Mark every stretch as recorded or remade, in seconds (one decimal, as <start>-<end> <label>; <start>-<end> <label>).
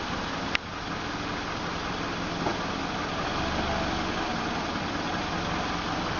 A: 0.0-6.2 recorded